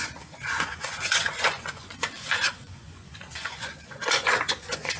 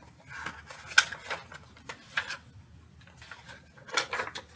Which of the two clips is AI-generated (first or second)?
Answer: first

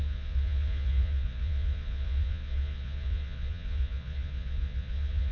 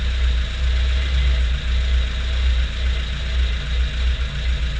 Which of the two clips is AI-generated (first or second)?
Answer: first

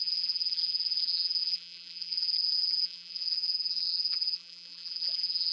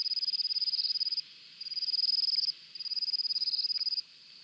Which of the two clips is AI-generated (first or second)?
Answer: first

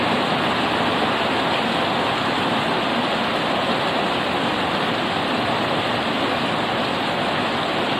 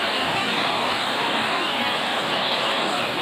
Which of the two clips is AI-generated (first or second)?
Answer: second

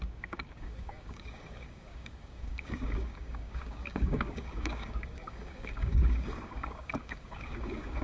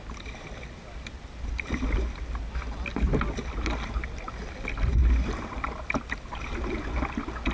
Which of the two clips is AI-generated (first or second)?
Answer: first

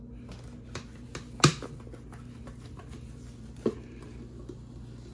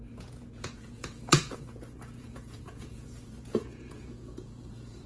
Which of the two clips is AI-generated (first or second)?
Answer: second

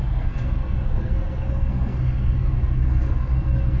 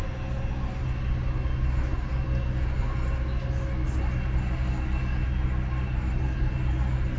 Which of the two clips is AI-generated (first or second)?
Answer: first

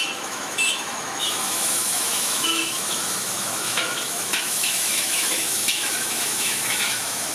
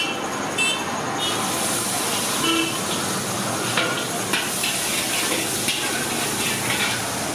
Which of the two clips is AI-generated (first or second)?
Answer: first